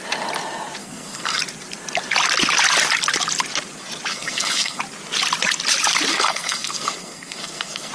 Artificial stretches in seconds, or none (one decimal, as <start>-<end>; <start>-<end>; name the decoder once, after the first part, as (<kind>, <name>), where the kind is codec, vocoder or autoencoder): 0.8-1.4 (codec, SNAC); 4.1-4.8; 6.1-7.9